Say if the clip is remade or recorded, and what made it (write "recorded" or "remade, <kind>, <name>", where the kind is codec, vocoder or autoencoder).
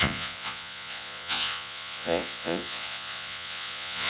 remade, vocoder, Vocos